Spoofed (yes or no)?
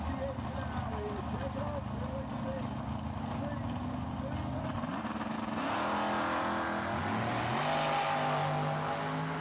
no